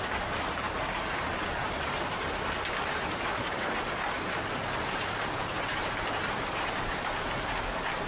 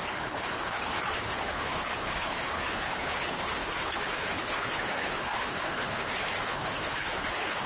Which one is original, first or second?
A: first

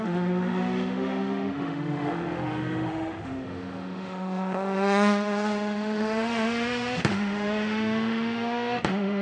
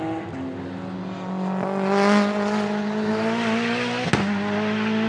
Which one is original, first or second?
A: second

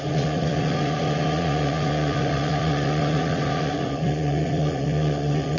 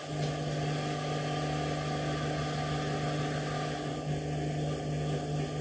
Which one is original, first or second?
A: second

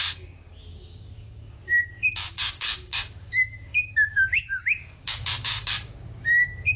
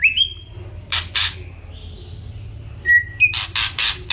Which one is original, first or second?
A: second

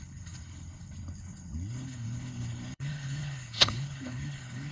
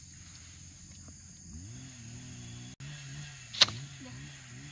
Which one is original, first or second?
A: second